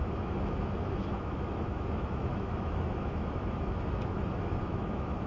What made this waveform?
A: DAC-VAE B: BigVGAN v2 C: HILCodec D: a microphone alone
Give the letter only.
A